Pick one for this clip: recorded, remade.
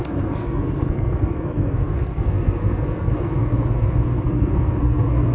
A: remade